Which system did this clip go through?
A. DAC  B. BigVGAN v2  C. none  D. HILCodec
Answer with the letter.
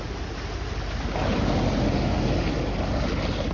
C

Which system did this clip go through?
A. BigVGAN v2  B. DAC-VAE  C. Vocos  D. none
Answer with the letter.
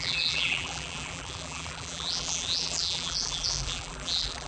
A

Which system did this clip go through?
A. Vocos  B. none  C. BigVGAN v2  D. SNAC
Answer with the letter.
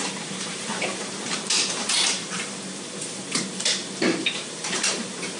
C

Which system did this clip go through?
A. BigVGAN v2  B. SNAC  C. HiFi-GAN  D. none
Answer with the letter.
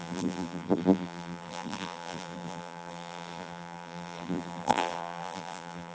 A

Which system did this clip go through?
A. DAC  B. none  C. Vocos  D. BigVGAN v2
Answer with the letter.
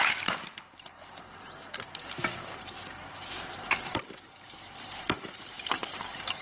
D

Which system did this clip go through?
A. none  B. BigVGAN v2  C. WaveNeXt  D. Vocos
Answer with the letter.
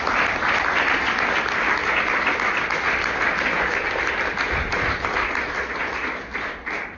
A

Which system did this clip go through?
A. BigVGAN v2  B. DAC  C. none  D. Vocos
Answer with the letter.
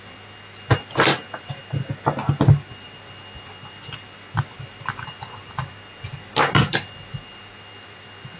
C